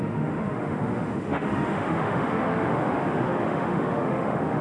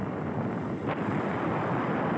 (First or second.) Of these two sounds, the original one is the second